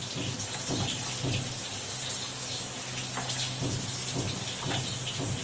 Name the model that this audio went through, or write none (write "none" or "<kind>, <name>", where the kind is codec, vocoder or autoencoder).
none